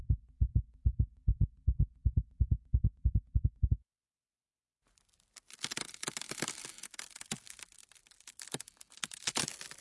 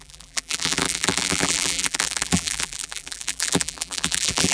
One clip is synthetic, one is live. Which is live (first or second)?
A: first